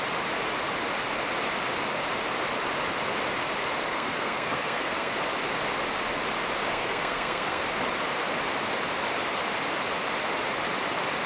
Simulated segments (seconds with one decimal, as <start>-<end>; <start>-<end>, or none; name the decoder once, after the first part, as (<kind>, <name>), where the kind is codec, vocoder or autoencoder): 3.9-5.1 (codec, SNAC); 6.7-7.6